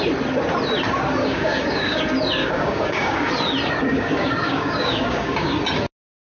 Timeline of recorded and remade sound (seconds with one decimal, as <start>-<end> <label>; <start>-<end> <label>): 0.0-1.2 recorded; 1.2-2.0 remade; 2.0-2.4 recorded; 2.4-3.3 remade; 3.3-3.9 recorded; 3.9-5.5 remade; 5.5-6.3 recorded

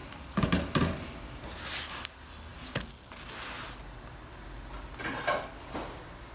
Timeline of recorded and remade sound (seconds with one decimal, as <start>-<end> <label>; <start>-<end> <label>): 0.0-1.7 remade; 1.7-6.3 recorded

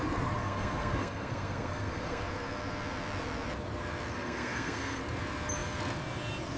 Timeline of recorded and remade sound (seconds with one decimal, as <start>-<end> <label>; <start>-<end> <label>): 0.0-0.4 recorded; 0.4-2.2 remade; 2.2-4.1 recorded; 4.1-5.0 remade; 5.0-6.6 recorded

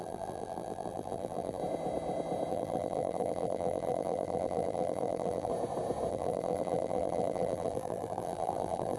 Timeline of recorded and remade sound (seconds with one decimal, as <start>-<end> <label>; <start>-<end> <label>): 0.0-1.6 remade; 1.6-2.5 recorded; 2.5-5.5 remade; 5.5-6.1 recorded; 6.1-9.0 remade

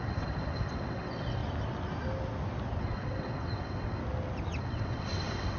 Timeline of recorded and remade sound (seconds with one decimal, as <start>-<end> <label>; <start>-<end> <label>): 0.0-1.4 remade; 1.4-2.8 recorded; 2.8-4.0 remade; 4.0-4.6 recorded; 4.6-5.6 remade